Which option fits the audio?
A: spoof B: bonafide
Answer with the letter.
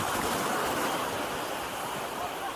B